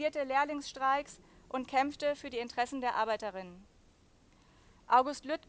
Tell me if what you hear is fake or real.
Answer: real